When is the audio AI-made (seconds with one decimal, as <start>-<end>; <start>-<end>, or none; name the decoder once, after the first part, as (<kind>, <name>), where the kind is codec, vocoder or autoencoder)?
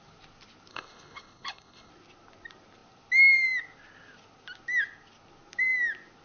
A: 0.7-1.9 (codec, HILCodec)